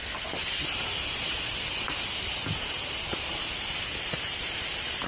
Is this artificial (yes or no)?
no